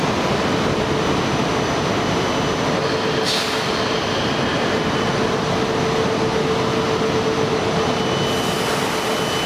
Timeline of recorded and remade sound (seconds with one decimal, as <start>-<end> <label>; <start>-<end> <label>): 0.0-9.5 recorded